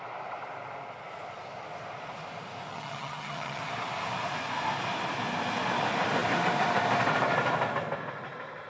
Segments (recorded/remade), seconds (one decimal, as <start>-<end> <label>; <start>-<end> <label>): 0.0-2.7 recorded; 2.7-3.6 remade; 3.6-8.7 recorded